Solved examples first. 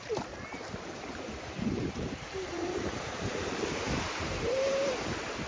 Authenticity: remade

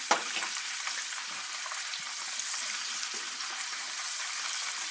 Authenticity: remade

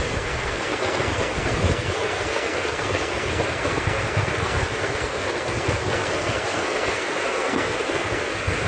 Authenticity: remade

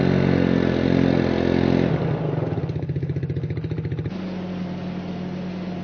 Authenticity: recorded